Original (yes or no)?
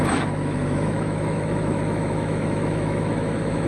no